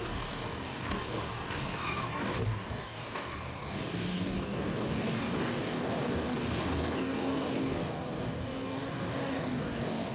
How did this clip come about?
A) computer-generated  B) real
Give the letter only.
A